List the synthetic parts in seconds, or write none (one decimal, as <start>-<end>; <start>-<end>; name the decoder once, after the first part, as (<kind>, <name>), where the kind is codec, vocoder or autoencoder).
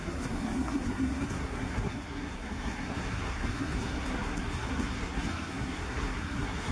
0.0-6.7 (codec, SNAC)